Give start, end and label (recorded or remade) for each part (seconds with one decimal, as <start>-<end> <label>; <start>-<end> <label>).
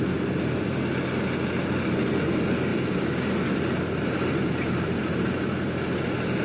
0.0-6.4 recorded